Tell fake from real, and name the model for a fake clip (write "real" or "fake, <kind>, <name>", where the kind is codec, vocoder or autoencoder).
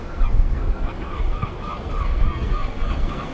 fake, codec, SNAC